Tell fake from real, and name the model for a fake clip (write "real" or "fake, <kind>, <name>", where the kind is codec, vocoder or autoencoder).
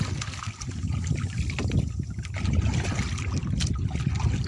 real